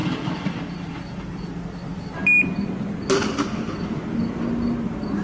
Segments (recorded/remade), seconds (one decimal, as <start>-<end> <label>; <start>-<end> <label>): 0.0-0.9 remade; 0.9-5.2 recorded